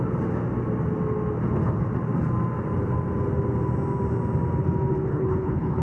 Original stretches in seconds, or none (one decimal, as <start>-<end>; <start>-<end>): 0.0-5.1